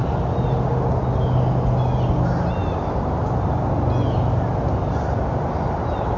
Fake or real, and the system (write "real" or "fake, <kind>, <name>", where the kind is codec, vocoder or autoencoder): real